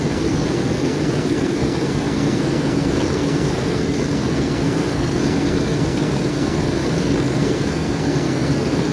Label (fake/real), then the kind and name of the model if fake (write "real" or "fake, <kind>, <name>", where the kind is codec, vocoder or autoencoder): fake, codec, SNAC